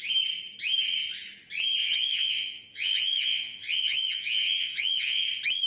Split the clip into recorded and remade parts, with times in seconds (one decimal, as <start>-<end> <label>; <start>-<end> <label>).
0.0-1.8 recorded; 1.8-5.2 remade; 5.2-5.7 recorded